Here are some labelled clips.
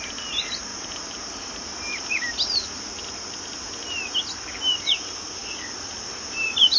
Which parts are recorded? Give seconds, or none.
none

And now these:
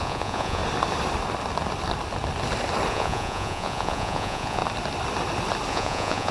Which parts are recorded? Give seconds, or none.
0.6-2.9; 4.6-5.7

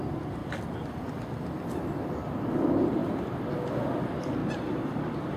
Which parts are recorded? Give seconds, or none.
0.0-5.4

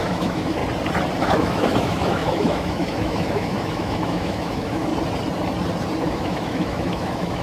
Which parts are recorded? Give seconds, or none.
0.6-1.2; 4.9-6.0